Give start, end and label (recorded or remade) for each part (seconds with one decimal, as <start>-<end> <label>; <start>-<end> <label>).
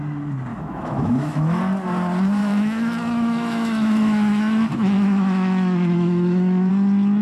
0.0-0.5 recorded; 0.5-1.6 remade; 1.6-2.4 recorded; 2.4-6.7 remade; 6.7-7.2 recorded